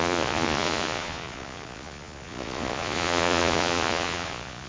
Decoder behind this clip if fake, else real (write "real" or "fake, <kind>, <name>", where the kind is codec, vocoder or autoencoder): fake, vocoder, Vocos